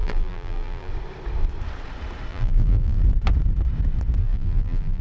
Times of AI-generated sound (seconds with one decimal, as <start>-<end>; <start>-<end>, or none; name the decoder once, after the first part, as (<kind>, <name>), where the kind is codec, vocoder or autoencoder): 0.0-0.9 (vocoder, BigVGAN v2); 2.3-3.0; 4.2-5.0